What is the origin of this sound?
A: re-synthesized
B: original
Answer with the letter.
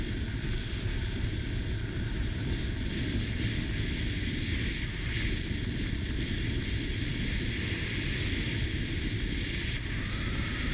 B